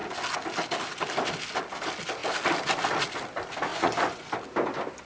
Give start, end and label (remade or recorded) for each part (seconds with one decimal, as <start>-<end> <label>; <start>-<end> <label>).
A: 0.0-3.7 recorded; 3.7-4.3 remade; 4.3-5.1 recorded